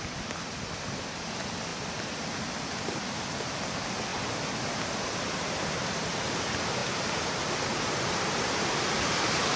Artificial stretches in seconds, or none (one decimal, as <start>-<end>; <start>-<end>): none